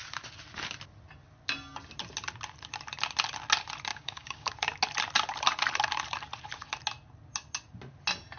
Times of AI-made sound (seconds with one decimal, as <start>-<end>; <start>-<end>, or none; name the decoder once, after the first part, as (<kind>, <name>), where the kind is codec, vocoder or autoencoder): 3.9-4.5 (codec, DAC)